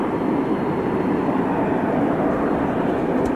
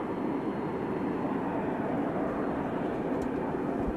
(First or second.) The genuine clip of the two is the second